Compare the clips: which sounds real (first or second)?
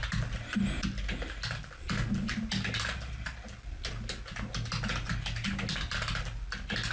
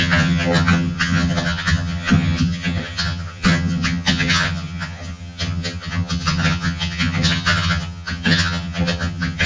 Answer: first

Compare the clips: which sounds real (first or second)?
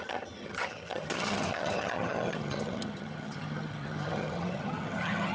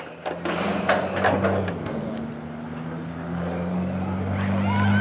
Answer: second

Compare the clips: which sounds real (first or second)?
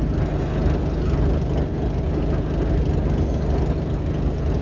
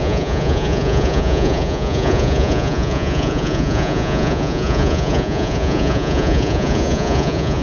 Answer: first